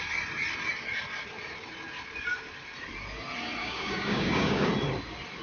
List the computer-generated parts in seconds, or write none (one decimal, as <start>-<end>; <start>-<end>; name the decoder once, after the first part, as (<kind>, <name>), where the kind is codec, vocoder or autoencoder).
3.6-4.7 (codec, DAC)